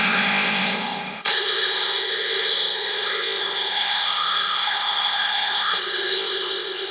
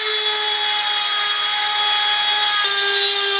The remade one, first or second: first